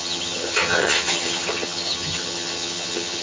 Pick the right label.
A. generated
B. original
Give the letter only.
A